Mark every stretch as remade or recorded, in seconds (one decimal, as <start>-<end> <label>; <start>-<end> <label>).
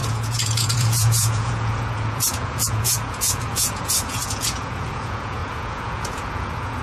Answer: 0.0-6.8 remade